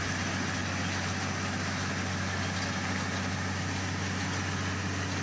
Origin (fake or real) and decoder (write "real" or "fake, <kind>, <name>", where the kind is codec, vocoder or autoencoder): real